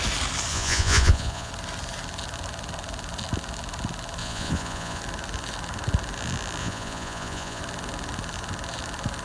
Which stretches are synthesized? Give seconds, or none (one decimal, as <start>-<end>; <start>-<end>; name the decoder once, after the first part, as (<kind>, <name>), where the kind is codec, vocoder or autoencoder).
0.5-1.5 (vocoder, Vocos); 4.2-5.0; 6.6-7.6